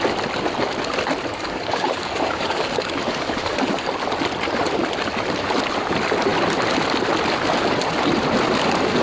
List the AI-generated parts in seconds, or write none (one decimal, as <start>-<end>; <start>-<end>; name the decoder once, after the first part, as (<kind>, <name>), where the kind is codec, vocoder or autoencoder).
1.3-3.9 (codec, DAC)